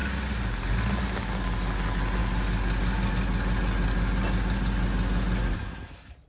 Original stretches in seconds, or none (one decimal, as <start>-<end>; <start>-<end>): 0.0-6.3

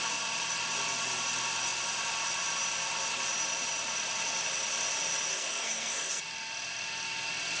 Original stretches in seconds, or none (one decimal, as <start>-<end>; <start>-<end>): 0.0-5.3; 6.2-7.6

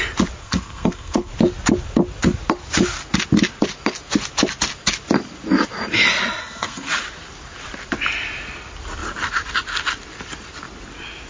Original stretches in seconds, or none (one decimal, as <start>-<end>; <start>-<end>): 0.0-0.4; 1.3-6.4; 6.9-11.3

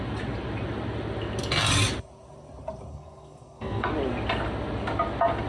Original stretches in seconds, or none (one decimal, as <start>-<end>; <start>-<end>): 0.0-2.9; 3.9-5.5

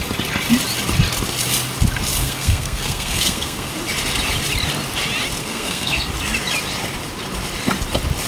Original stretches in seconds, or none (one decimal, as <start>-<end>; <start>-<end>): 0.0-2.2; 3.7-5.4; 6.1-8.3

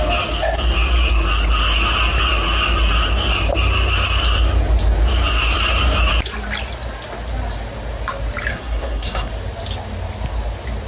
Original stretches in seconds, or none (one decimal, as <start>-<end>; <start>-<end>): 0.0-8.5; 9.3-10.9